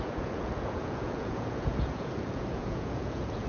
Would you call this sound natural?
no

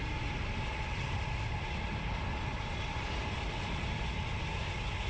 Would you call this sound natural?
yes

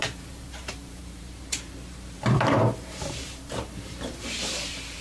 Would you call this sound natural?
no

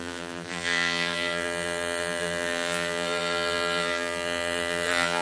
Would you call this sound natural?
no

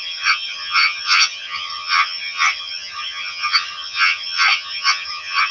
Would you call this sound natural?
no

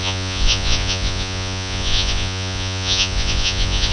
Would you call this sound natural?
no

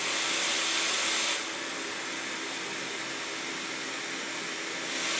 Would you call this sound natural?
yes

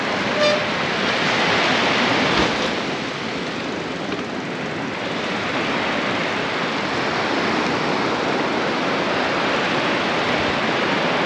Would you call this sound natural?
yes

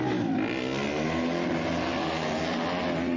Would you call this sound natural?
yes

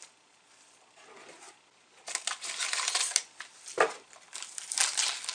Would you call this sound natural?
yes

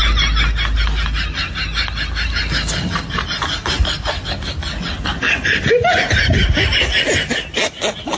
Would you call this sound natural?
yes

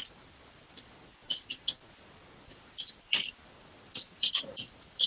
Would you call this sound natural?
no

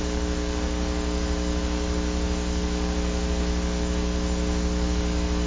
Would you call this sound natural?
no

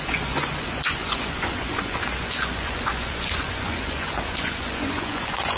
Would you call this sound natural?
no